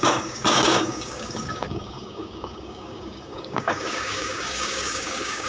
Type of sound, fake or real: fake